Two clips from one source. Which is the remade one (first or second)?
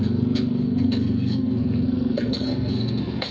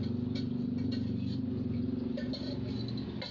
first